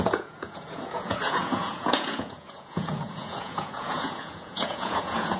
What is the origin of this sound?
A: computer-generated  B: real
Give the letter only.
A